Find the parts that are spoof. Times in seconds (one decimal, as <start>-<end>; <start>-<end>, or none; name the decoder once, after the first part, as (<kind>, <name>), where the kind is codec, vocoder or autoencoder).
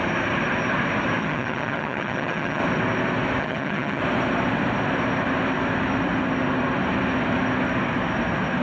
1.2-2.6 (vocoder, HiFi-GAN); 3.4-4.0